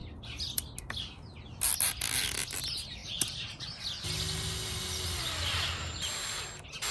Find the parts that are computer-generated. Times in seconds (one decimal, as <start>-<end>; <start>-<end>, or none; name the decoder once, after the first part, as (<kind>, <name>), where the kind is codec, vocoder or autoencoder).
none